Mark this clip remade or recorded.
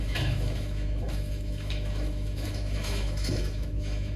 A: remade